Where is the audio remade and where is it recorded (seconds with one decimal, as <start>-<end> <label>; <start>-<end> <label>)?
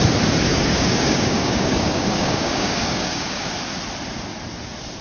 0.0-0.5 recorded; 0.5-3.5 remade; 3.5-5.0 recorded